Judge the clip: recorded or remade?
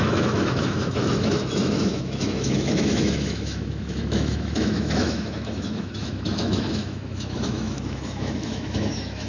remade